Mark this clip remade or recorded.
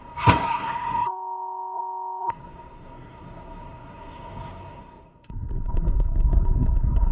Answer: remade